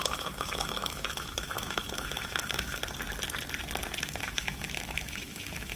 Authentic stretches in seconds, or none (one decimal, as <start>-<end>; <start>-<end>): 2.8-4.0